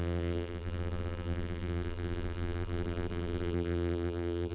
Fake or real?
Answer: fake